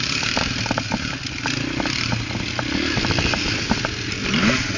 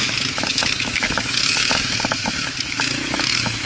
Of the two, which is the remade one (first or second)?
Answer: second